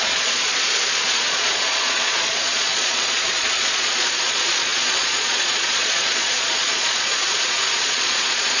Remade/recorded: remade